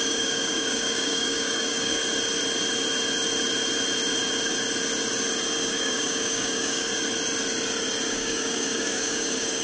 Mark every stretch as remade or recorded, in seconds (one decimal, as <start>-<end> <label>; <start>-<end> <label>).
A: 0.0-2.0 remade; 2.0-5.6 recorded; 5.6-6.9 remade; 6.9-8.1 recorded; 8.1-9.6 remade